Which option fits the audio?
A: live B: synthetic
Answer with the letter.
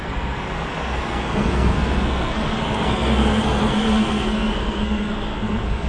B